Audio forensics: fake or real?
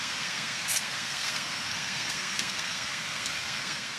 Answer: fake